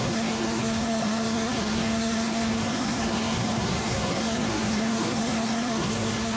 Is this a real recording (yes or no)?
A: no